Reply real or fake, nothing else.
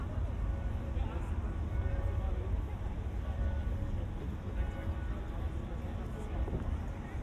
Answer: real